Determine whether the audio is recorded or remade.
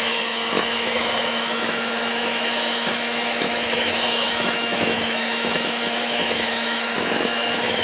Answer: remade